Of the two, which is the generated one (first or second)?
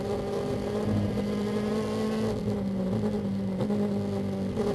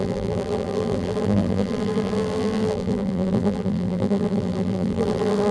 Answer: second